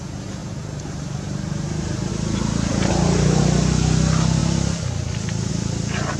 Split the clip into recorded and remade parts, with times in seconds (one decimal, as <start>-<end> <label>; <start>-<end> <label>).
0.0-0.4 recorded; 0.4-2.1 remade; 2.1-2.7 recorded; 2.7-3.4 remade; 3.4-6.2 recorded